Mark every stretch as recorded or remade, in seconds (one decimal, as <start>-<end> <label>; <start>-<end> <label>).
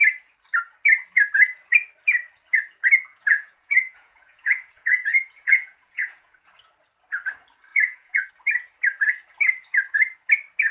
0.0-3.1 recorded; 3.1-6.5 remade; 6.5-7.7 recorded; 7.7-8.3 remade; 8.3-10.7 recorded